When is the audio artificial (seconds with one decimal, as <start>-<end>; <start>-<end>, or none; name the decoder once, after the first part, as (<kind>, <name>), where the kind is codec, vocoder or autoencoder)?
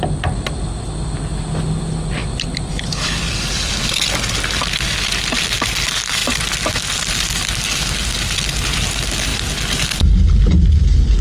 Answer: none